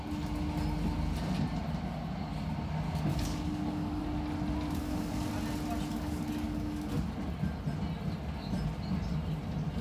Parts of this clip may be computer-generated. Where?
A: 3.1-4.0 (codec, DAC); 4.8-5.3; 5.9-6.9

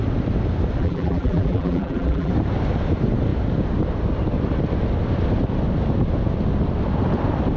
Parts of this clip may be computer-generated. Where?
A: 0.8-2.3 (vocoder, BigVGAN v2)

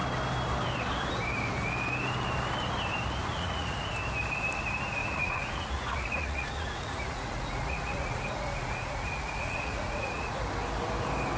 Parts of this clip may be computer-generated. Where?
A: 3.2-3.9 (vocoder, Vocos); 5.0-10.3

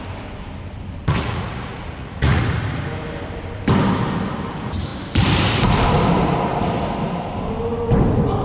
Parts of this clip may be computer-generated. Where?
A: 1.0-2.4 (vocoder, Vocos)

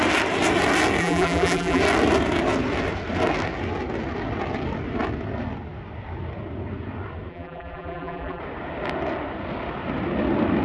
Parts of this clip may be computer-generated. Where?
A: 1.0-1.8 (vocoder, BigVGAN v2); 7.3-8.4